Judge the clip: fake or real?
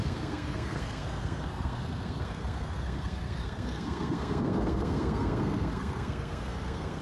fake